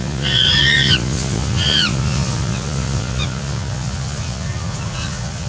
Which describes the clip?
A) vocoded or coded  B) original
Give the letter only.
A